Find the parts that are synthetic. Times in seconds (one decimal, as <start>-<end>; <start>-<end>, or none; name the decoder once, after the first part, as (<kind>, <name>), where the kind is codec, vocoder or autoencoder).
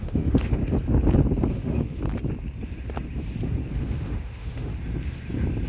0.0-0.6 (autoencoder, DAC-VAE); 1.5-2.0; 3.7-4.7